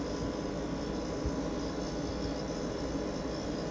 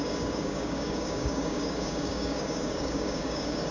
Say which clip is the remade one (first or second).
second